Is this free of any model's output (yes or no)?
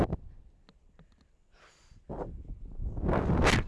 yes